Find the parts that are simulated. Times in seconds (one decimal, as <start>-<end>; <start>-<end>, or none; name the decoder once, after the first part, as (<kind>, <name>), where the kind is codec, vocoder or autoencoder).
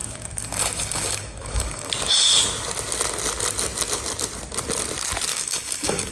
0.0-1.9 (codec, DAC); 5.3-6.1